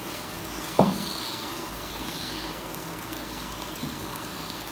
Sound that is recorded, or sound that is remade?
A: remade